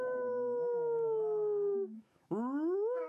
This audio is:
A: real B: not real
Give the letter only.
B